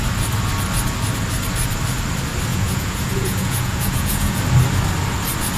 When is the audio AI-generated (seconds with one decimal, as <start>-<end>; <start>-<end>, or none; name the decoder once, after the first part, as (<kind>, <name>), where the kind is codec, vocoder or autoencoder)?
2.5-4.4 (vocoder, Vocos)